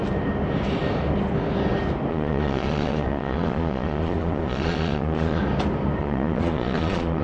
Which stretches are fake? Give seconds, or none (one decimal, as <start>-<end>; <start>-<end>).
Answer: 2.1-5.4; 6.0-7.2